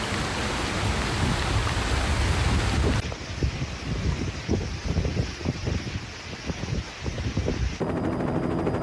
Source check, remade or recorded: recorded